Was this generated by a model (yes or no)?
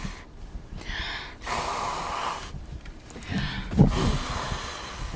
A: no